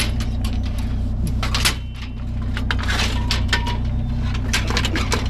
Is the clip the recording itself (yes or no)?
yes